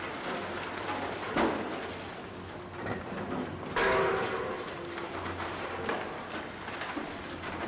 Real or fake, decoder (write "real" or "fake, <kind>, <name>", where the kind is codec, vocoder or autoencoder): real